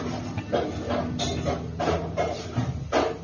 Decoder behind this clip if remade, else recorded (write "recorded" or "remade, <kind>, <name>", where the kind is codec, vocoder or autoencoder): recorded